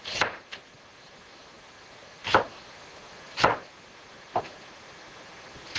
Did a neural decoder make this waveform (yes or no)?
no